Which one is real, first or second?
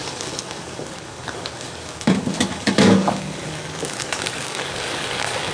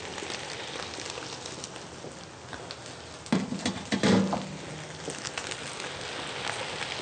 second